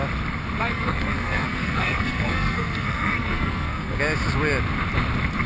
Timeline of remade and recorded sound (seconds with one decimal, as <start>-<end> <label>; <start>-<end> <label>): 0.0-0.7 recorded; 0.7-4.0 remade; 4.0-5.5 recorded